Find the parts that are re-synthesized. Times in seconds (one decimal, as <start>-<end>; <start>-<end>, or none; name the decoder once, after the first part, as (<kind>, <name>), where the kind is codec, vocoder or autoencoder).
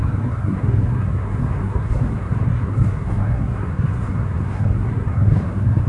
0.0-5.9 (codec, SNAC)